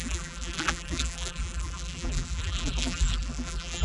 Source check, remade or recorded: remade